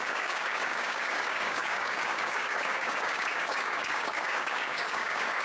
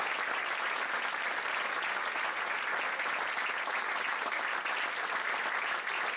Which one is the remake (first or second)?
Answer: first